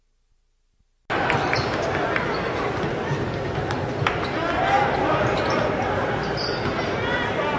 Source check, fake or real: real